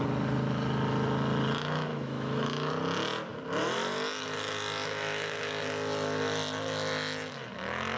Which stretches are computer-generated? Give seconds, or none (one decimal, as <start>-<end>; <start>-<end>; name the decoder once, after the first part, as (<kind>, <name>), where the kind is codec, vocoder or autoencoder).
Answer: 1.9-2.7 (autoencoder, DAC-VAE)

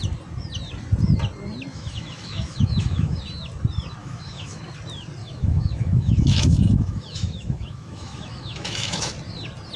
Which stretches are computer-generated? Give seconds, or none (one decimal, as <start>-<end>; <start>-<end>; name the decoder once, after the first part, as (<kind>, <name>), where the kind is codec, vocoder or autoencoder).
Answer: 1.7-3.2 (autoencoder, DAC-VAE); 4.0-4.6; 5.2-9.1

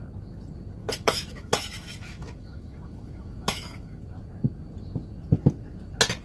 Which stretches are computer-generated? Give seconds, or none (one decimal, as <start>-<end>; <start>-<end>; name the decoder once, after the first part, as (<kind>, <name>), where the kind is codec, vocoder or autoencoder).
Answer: 0.8-4.0 (autoencoder, DAC-VAE)

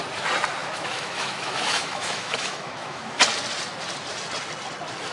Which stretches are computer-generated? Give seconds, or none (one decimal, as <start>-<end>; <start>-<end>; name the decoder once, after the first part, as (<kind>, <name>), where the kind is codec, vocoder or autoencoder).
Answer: 0.6-3.2 (autoencoder, DAC-VAE)

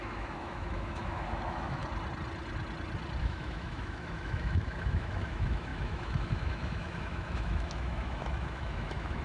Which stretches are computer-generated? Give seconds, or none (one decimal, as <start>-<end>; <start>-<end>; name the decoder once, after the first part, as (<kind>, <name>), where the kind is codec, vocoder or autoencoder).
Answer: 0.0-1.8 (autoencoder, DAC-VAE); 3.2-9.2